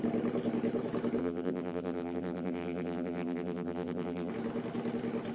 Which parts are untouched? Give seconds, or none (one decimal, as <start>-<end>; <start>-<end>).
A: 0.0-1.2; 4.3-5.3

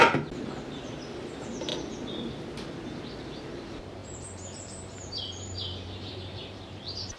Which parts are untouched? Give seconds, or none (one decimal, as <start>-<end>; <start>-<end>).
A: 1.7-3.4

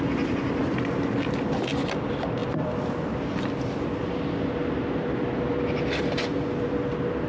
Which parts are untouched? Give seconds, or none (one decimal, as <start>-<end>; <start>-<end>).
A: 0.0-7.3